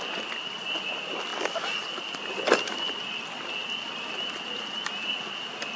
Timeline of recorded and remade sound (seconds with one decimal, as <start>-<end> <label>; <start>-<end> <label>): 0.0-5.8 recorded